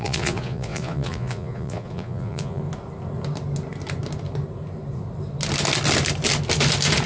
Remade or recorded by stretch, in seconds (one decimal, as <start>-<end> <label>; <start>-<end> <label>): 0.0-2.6 remade; 2.6-7.1 recorded